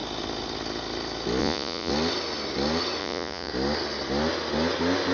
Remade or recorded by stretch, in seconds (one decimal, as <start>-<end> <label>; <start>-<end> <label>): 0.0-1.4 recorded; 1.4-1.9 remade; 1.9-3.0 recorded; 3.0-3.5 remade; 3.5-5.1 recorded